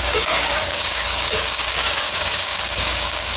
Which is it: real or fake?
fake